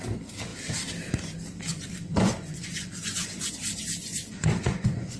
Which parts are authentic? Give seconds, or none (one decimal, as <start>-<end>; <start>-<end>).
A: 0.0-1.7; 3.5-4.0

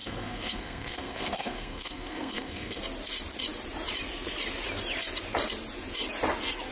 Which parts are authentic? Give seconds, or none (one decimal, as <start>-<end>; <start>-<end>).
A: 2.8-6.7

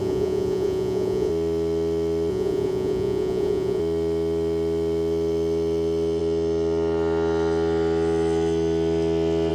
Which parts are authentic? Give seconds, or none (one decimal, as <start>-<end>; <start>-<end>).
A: 1.3-2.3; 3.8-9.5

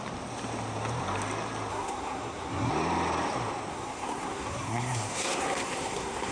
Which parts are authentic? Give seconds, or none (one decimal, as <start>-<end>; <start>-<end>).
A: 0.0-1.7; 2.7-3.7